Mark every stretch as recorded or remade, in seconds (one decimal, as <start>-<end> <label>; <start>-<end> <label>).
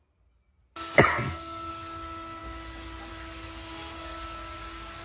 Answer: 0.0-1.1 recorded; 1.1-1.7 remade; 1.7-5.0 recorded